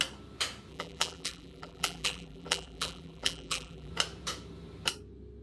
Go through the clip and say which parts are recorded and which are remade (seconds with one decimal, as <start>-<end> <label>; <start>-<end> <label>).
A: 0.0-0.7 recorded; 0.7-3.9 remade; 3.9-5.4 recorded